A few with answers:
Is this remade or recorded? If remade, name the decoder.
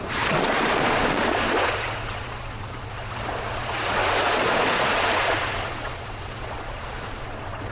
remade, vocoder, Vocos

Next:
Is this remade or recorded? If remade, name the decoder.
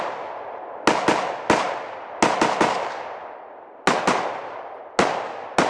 recorded